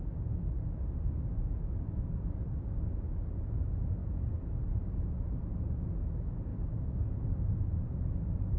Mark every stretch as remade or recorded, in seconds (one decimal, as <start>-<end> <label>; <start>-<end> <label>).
0.0-8.6 recorded